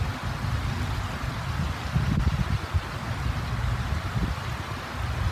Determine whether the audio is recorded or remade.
recorded